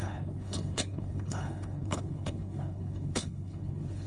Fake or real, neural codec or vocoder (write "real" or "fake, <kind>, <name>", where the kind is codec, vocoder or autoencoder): fake, codec, HILCodec